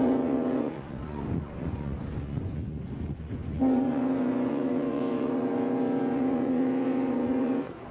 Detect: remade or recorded remade